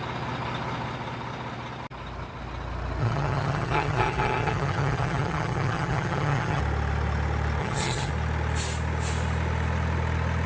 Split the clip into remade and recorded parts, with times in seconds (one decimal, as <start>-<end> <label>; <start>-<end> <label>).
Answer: 0.0-3.0 recorded; 3.0-6.6 remade; 6.6-7.6 recorded; 7.6-8.1 remade; 8.1-10.5 recorded